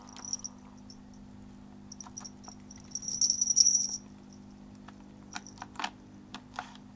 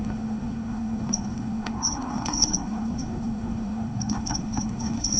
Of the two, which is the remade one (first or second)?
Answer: second